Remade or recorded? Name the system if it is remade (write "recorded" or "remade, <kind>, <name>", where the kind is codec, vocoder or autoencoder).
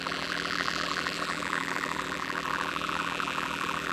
remade, vocoder, BigVGAN v2